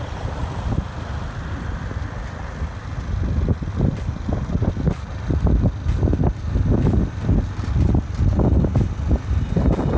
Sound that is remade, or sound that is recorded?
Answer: recorded